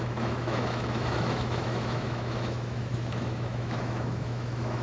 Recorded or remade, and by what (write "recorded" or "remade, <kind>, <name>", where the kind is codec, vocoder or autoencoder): remade, autoencoder, DAC-VAE